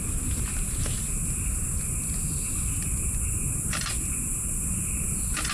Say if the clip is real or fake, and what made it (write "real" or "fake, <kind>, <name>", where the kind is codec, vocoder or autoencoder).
real